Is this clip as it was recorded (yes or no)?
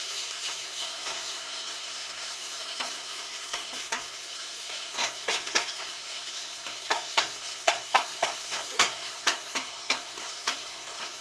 no